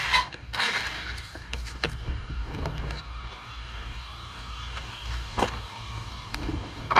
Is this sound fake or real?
fake